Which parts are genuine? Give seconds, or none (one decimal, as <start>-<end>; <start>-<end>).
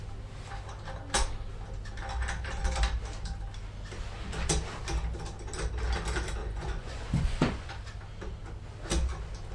0.0-6.4; 7.7-9.5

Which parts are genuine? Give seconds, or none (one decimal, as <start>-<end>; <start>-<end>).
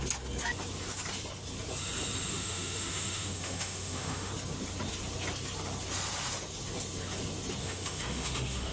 0.0-2.3; 4.3-7.6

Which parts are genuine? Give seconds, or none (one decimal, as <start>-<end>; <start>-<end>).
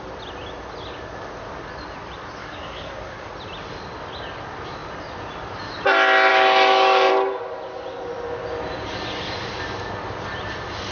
0.0-2.4; 3.3-6.3; 7.1-10.9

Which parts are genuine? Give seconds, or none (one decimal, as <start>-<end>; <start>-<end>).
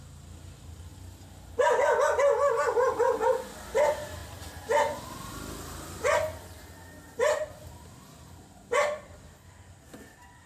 0.9-2.5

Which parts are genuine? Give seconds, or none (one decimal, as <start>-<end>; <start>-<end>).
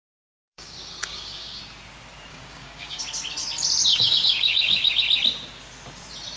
0.0-0.4; 1.6-2.3; 3.0-3.9; 5.0-6.4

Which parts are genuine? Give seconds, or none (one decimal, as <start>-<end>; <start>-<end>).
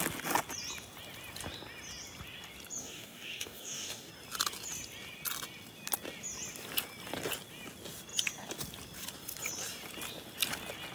0.0-2.8; 4.1-10.9